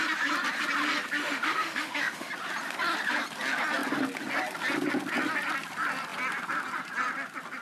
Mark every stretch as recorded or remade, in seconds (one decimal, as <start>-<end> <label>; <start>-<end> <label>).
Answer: 0.0-1.2 recorded; 1.2-2.3 remade; 2.3-7.6 recorded